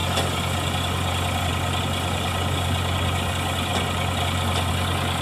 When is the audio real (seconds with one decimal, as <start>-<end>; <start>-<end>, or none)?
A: 0.0-5.2